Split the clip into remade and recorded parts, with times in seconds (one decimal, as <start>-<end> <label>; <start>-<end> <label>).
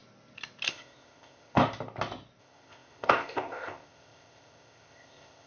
0.0-0.7 recorded; 0.7-1.6 remade; 1.6-2.4 recorded; 2.4-5.5 remade